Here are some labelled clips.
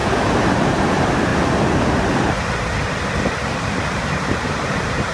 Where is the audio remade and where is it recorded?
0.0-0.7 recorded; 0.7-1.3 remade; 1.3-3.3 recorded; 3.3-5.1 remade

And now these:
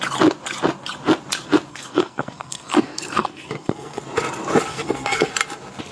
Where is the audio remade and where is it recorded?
0.0-1.7 recorded; 1.7-4.0 remade; 4.0-4.7 recorded; 4.7-5.3 remade; 5.3-5.9 recorded